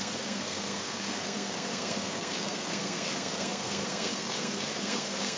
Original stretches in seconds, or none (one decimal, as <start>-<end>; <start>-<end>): none

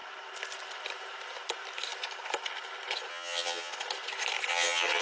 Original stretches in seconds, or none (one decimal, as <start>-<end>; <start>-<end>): 0.0-3.1; 3.7-4.5

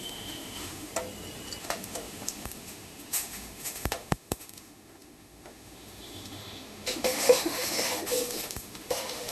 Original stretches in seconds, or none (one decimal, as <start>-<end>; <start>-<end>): 0.9-1.6

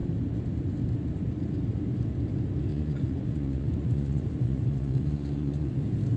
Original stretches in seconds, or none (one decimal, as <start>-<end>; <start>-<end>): 0.0-2.7; 5.8-6.2

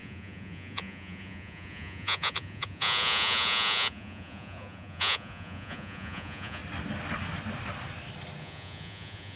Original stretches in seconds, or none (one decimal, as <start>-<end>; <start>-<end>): 6.6-8.4

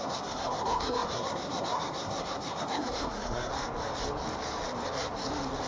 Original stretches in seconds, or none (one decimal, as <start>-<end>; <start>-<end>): 3.5-5.7